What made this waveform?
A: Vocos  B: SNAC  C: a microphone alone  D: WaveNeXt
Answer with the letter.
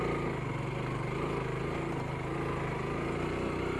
C